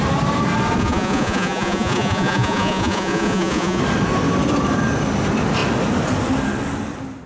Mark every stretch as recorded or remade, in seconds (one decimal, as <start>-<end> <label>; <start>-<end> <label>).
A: 0.0-0.8 recorded; 0.8-3.8 remade; 3.8-7.3 recorded